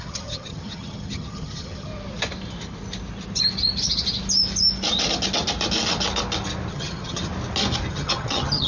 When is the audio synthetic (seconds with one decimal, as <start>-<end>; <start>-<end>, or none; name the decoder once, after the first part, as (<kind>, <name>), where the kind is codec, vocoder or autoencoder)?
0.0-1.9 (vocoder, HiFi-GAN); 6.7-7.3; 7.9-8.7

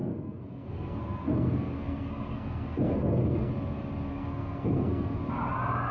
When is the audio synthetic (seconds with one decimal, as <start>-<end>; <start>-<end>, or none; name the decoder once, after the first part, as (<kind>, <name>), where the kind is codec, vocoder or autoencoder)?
0.0-3.5 (codec, SNAC); 4.1-5.2

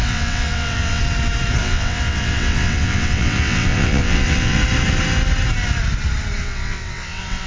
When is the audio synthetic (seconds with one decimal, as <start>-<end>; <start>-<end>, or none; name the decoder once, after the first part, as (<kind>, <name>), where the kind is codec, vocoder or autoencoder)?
0.0-1.0 (vocoder, WaveNeXt); 1.6-4.6; 6.4-7.5

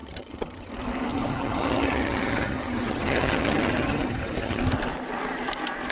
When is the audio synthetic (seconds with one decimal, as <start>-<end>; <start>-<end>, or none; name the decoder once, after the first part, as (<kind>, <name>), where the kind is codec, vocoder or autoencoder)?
0.0-0.7 (vocoder, HiFi-GAN); 1.1-4.6

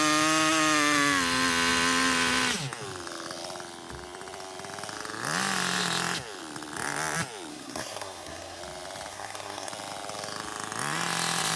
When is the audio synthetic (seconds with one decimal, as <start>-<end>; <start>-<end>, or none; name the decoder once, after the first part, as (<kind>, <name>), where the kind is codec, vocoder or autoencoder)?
7.5-8.6 (codec, SNAC); 9.1-9.7

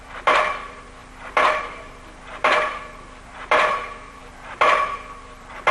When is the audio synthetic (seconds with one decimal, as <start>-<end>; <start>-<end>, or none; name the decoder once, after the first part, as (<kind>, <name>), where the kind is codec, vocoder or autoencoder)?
0.0-5.7 (vocoder, BigVGAN v2)

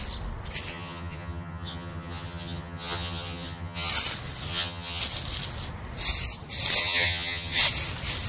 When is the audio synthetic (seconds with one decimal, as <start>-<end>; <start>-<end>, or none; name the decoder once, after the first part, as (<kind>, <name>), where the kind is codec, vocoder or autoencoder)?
0.7-3.9 (vocoder, HiFi-GAN); 4.5-5.0; 6.8-7.6